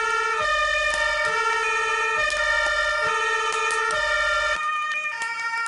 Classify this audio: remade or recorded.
recorded